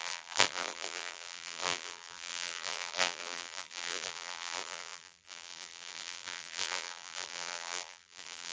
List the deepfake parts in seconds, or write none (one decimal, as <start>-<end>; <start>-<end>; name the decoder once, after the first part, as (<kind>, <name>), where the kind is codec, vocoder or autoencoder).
0.0-8.5 (vocoder, BigVGAN v2)